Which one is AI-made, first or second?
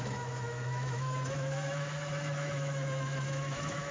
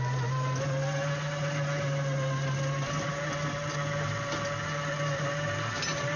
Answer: first